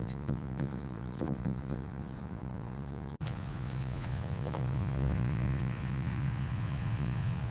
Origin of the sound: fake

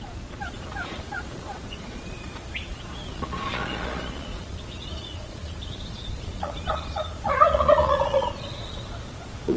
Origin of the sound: fake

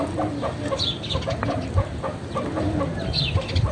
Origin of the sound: real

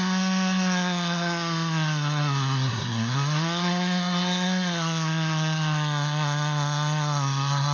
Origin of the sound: fake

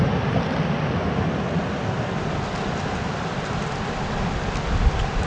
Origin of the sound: real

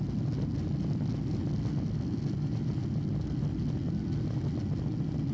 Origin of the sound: real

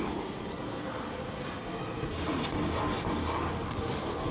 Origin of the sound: real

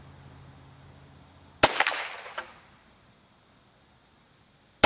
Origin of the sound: real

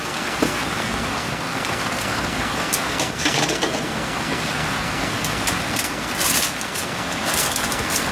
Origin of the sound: fake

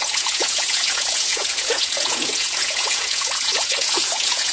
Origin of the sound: fake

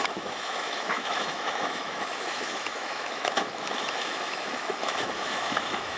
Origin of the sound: fake